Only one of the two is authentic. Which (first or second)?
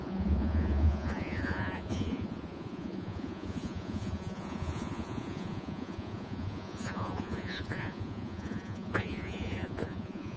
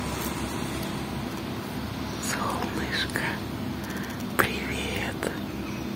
second